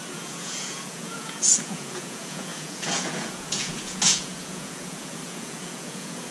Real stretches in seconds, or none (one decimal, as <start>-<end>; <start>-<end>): none